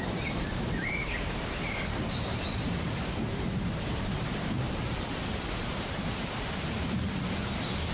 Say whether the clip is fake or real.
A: fake